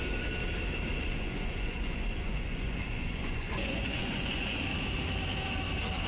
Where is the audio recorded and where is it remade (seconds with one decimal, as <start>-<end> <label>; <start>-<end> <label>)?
0.0-0.9 recorded; 0.9-4.6 remade; 4.6-6.1 recorded